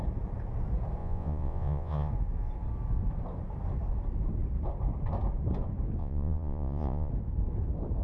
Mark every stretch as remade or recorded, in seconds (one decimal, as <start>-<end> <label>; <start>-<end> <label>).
0.0-1.0 recorded; 1.0-2.1 remade; 2.1-6.0 recorded; 6.0-7.1 remade; 7.1-8.0 recorded